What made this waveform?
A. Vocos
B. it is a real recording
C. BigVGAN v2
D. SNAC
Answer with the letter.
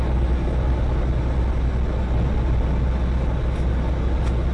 B